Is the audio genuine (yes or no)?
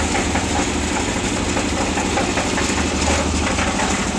yes